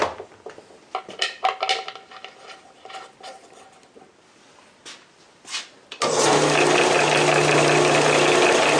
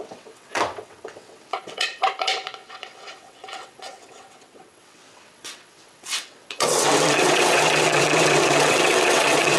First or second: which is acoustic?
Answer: first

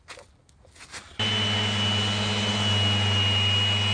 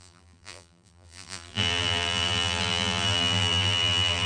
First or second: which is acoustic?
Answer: first